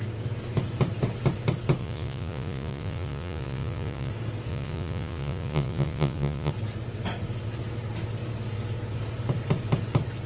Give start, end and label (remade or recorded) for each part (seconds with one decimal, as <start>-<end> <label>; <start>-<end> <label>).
0.0-1.8 recorded; 1.8-4.1 remade; 4.1-4.5 recorded; 4.5-6.5 remade; 6.5-10.3 recorded